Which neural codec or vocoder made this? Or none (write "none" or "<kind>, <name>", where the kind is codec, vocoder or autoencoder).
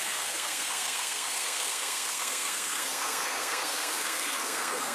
codec, SNAC